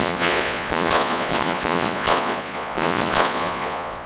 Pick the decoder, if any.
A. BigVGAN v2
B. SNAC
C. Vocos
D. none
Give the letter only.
C